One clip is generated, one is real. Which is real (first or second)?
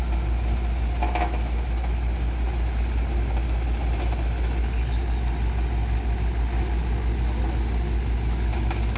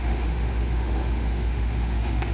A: first